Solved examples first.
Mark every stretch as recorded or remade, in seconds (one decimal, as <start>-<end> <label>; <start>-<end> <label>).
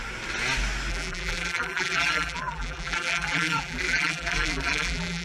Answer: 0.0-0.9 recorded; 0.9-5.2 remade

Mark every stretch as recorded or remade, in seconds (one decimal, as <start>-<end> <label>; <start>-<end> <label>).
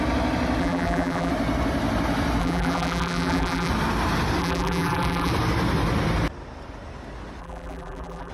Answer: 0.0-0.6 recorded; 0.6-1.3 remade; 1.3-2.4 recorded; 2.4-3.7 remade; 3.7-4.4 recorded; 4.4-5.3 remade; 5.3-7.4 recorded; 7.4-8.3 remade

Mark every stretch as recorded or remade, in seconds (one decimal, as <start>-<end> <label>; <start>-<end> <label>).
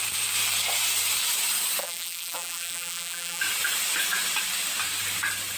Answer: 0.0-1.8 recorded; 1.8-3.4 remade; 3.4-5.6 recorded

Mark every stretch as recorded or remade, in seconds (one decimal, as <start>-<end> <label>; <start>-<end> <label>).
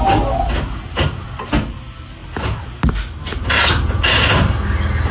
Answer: 0.0-5.1 recorded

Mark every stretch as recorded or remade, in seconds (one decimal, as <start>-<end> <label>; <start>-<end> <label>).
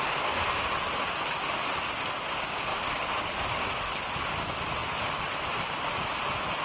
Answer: 0.0-2.7 recorded; 2.7-3.8 remade; 3.8-4.8 recorded; 4.8-5.9 remade; 5.9-6.6 recorded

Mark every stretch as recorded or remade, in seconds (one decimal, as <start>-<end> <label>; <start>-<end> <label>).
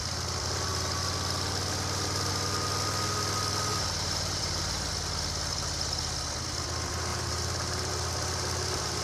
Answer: 0.0-3.7 recorded; 3.7-4.9 remade; 4.9-7.1 recorded; 7.1-7.9 remade; 7.9-9.0 recorded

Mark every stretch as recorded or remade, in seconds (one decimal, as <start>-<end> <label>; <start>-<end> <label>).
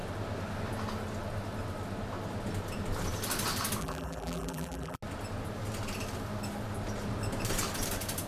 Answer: 0.0-3.8 recorded; 3.8-5.0 remade; 5.0-8.3 recorded